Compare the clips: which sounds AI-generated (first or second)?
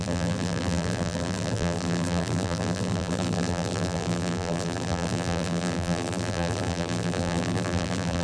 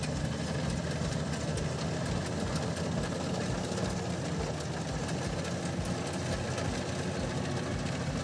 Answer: first